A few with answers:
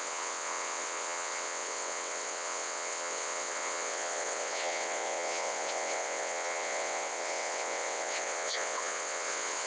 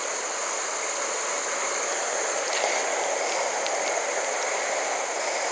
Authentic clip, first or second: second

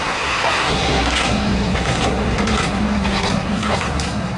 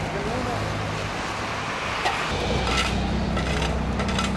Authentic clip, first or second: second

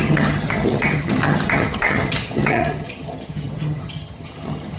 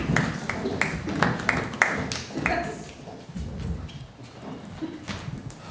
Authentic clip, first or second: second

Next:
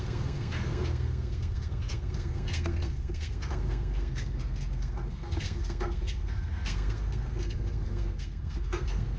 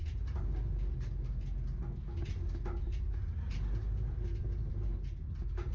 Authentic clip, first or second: second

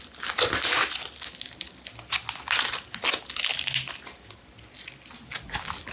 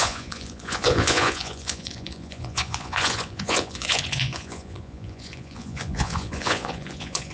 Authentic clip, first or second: first